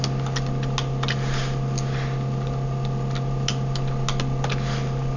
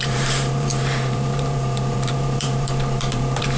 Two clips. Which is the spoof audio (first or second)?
second